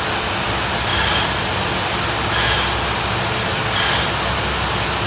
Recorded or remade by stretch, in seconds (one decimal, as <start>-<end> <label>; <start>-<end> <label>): 0.0-5.1 recorded